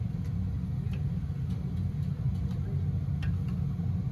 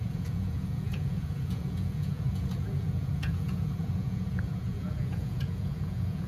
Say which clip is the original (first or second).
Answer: first